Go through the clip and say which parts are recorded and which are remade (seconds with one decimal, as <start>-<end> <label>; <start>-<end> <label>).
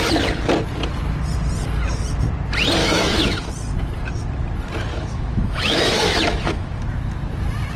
0.0-2.8 recorded; 2.8-3.5 remade; 3.5-4.9 recorded; 4.9-6.8 remade; 6.8-7.8 recorded